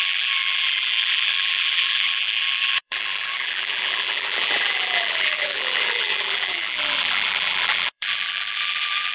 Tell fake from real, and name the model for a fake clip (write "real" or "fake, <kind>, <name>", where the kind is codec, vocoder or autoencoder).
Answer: fake, vocoder, BigVGAN v2